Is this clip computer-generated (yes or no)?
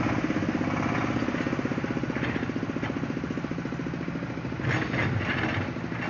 no